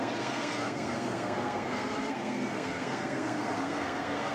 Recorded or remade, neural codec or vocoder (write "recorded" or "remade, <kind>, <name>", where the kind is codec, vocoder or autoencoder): remade, codec, SNAC